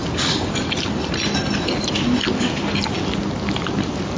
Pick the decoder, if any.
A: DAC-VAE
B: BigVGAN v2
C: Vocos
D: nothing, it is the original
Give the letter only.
D